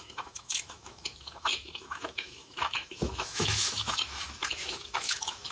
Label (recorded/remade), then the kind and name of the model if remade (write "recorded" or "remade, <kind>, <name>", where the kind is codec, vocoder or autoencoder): remade, autoencoder, DAC-VAE